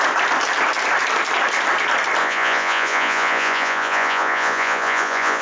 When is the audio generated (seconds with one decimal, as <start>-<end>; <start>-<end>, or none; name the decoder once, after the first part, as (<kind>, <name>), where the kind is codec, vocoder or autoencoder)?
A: 2.2-5.4 (vocoder, Vocos)